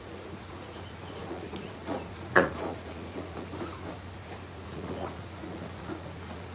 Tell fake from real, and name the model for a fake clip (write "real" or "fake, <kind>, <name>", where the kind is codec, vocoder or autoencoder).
fake, vocoder, Vocos